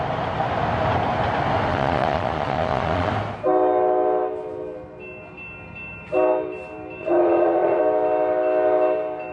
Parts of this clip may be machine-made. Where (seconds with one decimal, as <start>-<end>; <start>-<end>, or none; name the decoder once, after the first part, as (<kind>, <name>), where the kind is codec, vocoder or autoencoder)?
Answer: 1.7-3.1 (vocoder, Vocos); 7.0-7.8